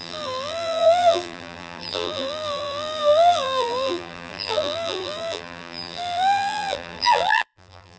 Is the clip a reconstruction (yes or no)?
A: yes